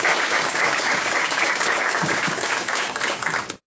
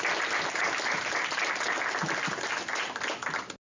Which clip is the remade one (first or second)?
first